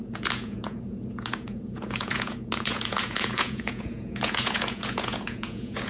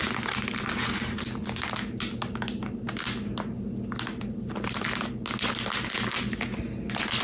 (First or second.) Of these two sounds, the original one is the second